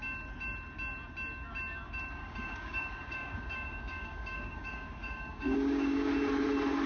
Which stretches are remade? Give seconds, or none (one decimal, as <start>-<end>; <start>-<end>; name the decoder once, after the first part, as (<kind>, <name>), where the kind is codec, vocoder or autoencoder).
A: 2.2-6.1 (codec, DAC)